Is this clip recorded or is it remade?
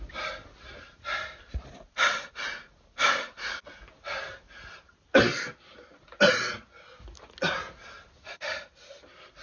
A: recorded